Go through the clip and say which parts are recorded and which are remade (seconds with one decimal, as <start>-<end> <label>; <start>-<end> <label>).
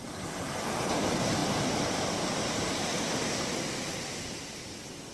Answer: 0.0-5.1 remade